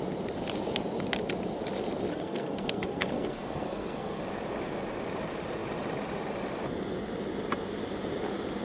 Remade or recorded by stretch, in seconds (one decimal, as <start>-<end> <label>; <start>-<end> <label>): 0.0-2.1 recorded; 2.1-4.2 remade; 4.2-8.6 recorded